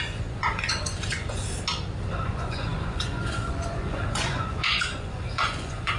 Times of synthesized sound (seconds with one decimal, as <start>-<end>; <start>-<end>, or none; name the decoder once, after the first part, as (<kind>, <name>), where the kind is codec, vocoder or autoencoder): 0.0-1.4 (vocoder, Vocos); 2.1-6.0